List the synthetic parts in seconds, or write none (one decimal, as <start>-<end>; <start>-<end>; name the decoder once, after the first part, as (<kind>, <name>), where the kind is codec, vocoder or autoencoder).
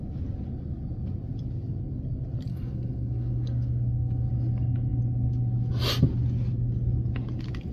2.5-4.3 (codec, SNAC)